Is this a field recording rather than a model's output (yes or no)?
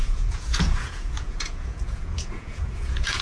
no